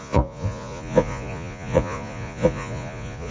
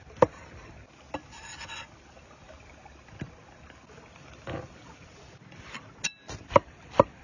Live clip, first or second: second